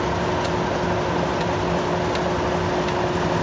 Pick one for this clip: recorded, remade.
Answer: recorded